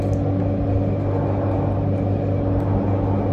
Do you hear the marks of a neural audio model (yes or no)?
no